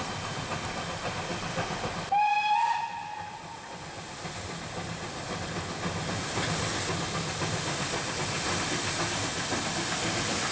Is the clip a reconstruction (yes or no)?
no